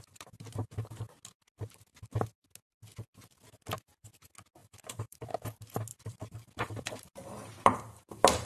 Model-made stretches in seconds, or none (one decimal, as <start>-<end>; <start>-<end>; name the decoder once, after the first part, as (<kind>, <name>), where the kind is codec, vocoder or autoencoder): 4.6-5.3 (vocoder, BigVGAN v2); 5.9-8.5